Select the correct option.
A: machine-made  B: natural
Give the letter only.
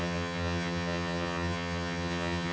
A